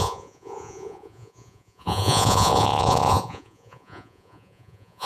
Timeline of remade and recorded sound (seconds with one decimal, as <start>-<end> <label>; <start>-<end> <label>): 0.0-5.1 remade